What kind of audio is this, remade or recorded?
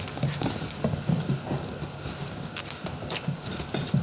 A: recorded